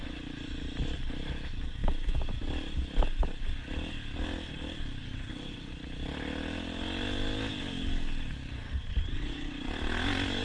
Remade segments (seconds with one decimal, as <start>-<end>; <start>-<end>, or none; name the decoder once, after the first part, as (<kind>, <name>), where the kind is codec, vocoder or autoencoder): 5.0-5.7 (vocoder, WaveNeXt); 8.9-9.7